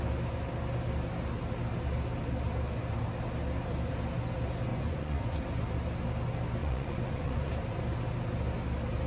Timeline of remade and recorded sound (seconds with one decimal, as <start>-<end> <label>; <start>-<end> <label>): 0.0-4.7 recorded; 4.7-5.4 remade; 5.4-6.6 recorded; 6.6-7.5 remade; 7.5-9.1 recorded